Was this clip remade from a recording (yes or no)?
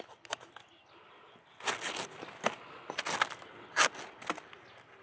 no